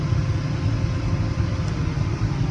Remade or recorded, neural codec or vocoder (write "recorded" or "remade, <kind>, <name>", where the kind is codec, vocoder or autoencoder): recorded